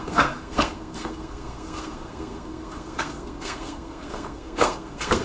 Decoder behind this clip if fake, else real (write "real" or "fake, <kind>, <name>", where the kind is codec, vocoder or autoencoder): fake, codec, SNAC